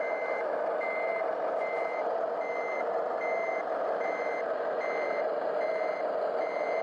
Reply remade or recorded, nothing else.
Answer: recorded